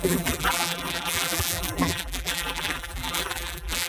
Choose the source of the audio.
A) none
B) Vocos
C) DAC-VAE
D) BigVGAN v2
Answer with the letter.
D